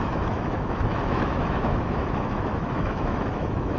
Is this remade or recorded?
remade